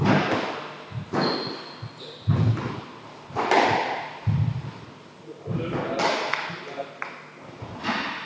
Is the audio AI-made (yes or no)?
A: no